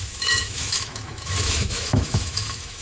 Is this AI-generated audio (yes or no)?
yes